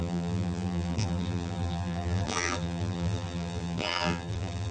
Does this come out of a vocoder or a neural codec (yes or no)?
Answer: yes